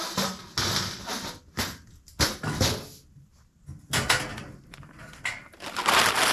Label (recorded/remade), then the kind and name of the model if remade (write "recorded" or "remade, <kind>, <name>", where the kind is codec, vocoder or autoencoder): recorded